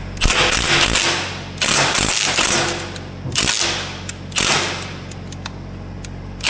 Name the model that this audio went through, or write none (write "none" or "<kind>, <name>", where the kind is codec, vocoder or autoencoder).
none